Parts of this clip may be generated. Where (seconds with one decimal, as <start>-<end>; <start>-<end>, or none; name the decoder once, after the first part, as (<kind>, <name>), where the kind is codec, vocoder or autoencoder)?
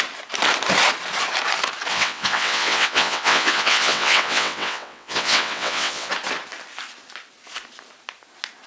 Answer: 1.9-6.1 (vocoder, WaveNeXt)